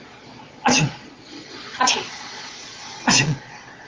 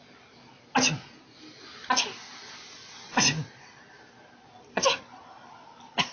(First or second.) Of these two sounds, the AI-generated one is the first